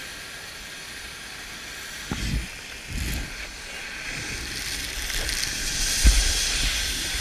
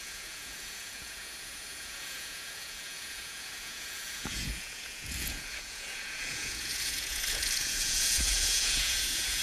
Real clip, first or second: first